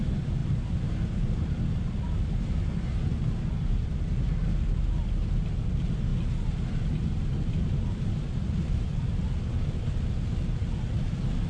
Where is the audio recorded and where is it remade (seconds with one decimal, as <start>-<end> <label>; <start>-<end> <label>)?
0.0-11.5 recorded